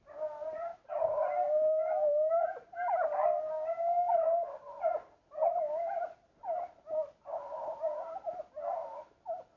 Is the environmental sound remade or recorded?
recorded